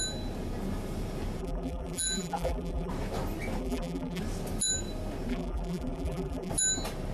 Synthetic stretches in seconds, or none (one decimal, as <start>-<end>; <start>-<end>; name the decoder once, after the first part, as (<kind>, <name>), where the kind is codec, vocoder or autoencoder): 1.4-2.9 (vocoder, BigVGAN v2); 3.6-4.2; 5.3-6.5

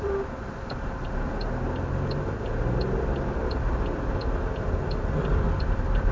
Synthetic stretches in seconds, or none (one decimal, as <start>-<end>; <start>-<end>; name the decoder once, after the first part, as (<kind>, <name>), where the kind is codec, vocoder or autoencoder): 0.0-1.3 (vocoder, BigVGAN v2); 5.0-6.1

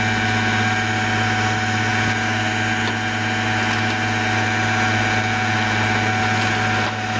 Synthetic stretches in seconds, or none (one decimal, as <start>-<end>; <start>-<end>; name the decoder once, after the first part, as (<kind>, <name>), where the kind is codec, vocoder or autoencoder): none